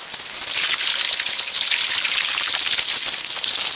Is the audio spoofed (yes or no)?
no